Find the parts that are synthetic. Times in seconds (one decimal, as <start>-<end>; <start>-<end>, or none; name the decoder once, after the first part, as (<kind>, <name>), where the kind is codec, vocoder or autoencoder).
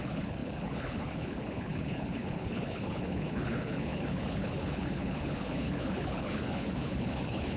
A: 0.0-7.6 (codec, HILCodec)